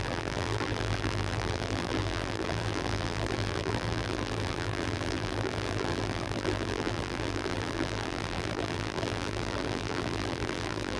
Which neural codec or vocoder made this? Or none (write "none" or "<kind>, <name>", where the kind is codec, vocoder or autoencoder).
vocoder, BigVGAN v2